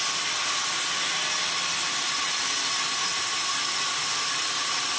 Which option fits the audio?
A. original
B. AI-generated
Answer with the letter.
A